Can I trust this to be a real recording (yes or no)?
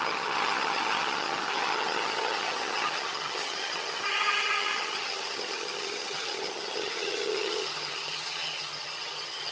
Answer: no